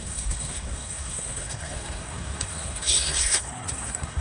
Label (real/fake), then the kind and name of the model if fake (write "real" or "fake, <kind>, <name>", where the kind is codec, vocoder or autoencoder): fake, codec, SNAC